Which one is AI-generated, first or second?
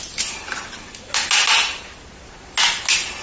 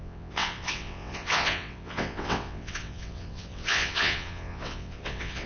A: second